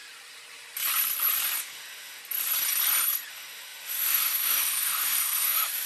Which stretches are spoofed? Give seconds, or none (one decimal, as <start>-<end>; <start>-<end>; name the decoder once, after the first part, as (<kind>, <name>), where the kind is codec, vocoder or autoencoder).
1.6-2.2 (autoencoder, DAC-VAE); 3.3-5.9